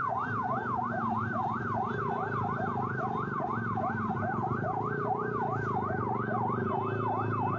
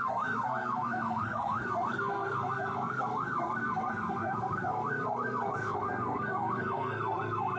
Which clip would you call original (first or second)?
first